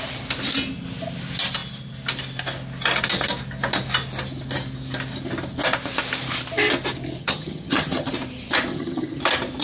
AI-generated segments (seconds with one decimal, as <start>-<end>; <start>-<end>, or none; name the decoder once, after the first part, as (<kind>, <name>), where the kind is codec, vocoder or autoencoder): 7.2-8.1 (vocoder, HiFi-GAN); 8.7-9.2